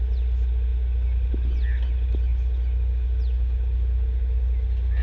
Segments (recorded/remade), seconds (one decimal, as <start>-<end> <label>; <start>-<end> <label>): 0.0-5.0 recorded